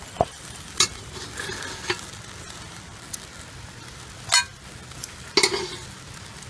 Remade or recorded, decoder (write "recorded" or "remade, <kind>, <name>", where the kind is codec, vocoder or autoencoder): recorded